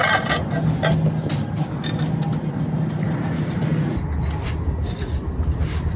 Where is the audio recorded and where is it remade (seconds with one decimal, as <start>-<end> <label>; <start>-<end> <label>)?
0.0-6.0 recorded